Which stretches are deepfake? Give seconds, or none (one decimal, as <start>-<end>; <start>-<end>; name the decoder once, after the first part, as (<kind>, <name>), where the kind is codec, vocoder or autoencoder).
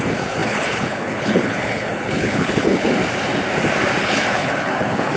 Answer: 0.0-3.0 (codec, HILCodec); 4.0-5.2